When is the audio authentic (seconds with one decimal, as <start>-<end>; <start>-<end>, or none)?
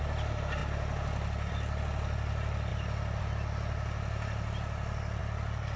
0.0-5.8